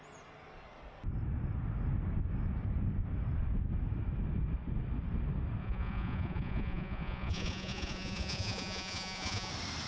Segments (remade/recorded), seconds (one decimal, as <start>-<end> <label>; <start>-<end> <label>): 0.0-5.6 recorded; 5.6-9.5 remade; 9.5-9.9 recorded